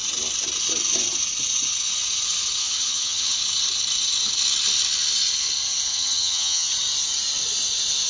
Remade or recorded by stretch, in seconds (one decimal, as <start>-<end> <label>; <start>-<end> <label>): 0.0-2.6 recorded; 2.6-3.4 remade; 3.4-5.9 recorded; 5.9-6.7 remade; 6.7-8.1 recorded